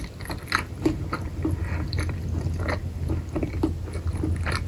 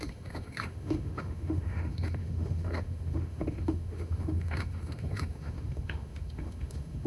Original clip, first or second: first